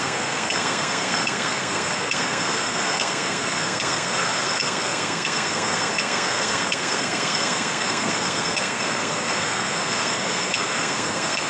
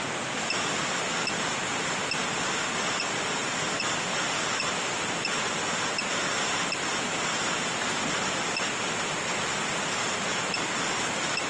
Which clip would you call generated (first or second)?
first